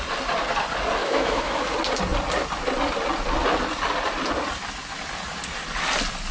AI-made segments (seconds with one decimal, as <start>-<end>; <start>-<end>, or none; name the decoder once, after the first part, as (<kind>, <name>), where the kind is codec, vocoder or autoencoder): 1.0-1.6 (autoencoder, DAC-VAE)